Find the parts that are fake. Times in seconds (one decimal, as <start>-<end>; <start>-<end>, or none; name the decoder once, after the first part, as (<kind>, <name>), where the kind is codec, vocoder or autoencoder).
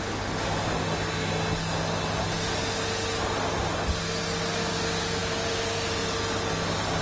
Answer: none